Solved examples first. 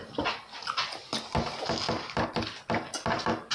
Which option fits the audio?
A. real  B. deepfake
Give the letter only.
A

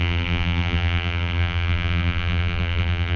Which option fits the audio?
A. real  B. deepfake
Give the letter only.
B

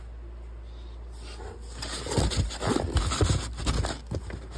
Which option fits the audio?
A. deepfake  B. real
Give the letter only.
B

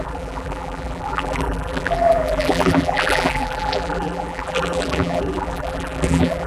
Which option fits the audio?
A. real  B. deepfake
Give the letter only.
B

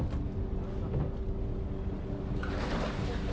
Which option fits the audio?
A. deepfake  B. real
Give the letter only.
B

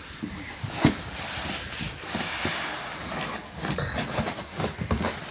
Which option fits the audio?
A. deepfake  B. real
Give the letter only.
B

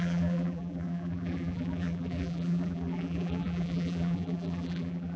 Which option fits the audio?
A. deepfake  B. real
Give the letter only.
A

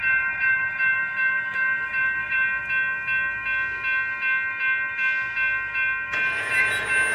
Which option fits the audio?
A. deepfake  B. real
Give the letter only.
B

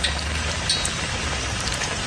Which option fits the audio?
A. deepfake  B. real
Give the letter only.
A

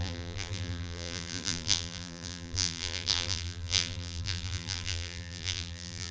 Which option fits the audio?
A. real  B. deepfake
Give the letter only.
B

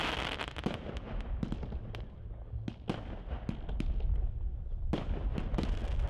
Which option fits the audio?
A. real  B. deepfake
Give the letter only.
A